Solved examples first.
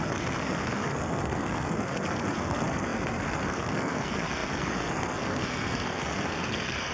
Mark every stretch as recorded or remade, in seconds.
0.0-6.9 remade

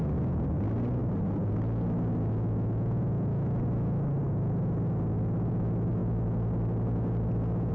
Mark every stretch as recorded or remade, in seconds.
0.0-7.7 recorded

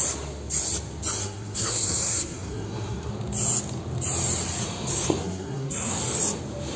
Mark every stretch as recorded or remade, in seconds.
0.0-1.2 recorded; 1.2-3.1 remade; 3.1-5.2 recorded; 5.2-6.0 remade; 6.0-6.8 recorded

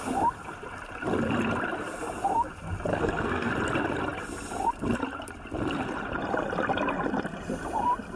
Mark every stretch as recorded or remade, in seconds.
0.0-2.9 recorded; 2.9-3.5 remade; 3.5-8.2 recorded